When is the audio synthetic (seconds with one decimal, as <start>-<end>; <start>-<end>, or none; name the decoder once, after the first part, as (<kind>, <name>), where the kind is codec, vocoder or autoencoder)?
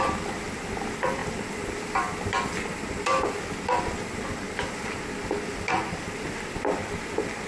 0.0-7.5 (vocoder, BigVGAN v2)